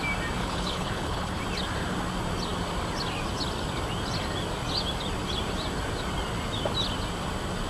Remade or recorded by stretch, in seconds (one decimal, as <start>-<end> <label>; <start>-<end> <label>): 0.0-0.4 recorded; 0.4-1.4 remade; 1.4-7.7 recorded